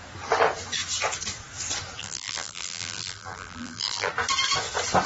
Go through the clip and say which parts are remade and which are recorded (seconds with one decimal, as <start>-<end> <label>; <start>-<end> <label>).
0.0-2.0 recorded; 2.0-4.1 remade; 4.1-5.1 recorded